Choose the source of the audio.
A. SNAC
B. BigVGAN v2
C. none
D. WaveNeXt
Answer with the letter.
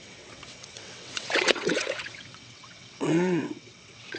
D